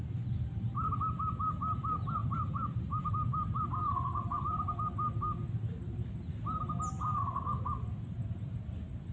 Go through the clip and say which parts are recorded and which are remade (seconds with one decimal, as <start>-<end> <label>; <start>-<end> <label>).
0.0-9.1 recorded